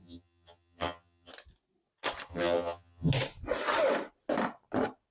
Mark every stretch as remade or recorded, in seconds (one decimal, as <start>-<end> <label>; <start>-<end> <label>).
0.0-1.3 remade; 1.3-2.3 recorded; 2.3-3.1 remade; 3.1-5.1 recorded